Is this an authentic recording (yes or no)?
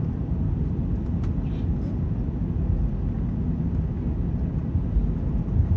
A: yes